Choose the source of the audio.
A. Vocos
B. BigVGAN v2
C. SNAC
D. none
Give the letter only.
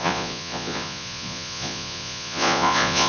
A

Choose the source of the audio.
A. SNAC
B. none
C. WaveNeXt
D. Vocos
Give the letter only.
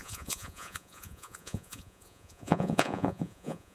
D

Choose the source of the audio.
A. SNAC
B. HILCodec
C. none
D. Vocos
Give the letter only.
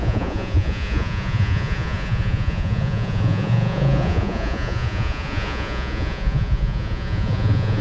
D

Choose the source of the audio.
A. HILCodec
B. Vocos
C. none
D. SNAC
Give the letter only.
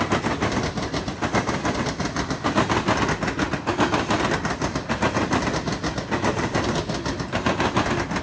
C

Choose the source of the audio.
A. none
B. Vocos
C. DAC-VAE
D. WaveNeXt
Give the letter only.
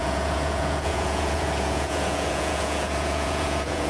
B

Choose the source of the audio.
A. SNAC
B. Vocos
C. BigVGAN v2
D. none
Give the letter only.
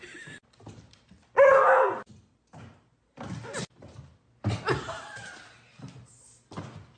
D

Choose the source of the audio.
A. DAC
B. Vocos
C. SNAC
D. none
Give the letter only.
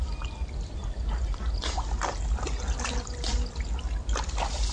D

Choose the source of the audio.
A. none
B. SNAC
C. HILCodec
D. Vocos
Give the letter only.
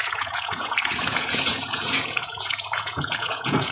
D